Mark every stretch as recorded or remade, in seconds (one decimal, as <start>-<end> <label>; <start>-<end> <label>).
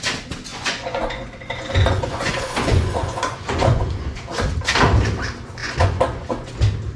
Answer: 0.0-0.5 recorded; 0.5-4.2 remade; 4.2-5.6 recorded; 5.6-6.5 remade; 6.5-7.0 recorded